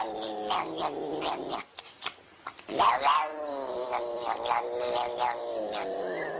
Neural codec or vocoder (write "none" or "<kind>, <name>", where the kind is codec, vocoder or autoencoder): none